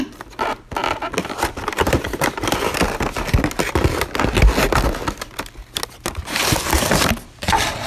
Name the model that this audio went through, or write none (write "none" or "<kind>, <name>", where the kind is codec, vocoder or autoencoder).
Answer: none